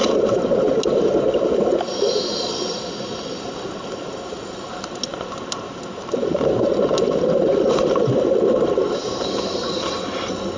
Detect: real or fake real